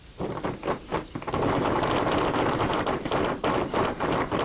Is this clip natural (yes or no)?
yes